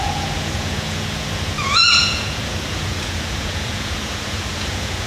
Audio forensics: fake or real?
fake